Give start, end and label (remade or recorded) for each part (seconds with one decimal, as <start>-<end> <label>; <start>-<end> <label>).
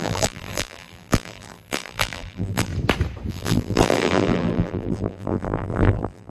0.0-2.7 remade; 2.7-3.3 recorded; 3.3-6.3 remade